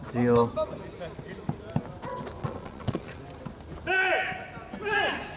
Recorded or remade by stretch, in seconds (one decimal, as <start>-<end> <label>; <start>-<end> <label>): 0.0-2.4 recorded; 2.4-3.2 remade; 3.2-5.4 recorded